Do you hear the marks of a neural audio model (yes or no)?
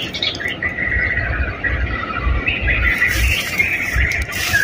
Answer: yes